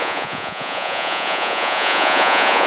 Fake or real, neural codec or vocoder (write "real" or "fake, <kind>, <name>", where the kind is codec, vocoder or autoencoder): fake, vocoder, Vocos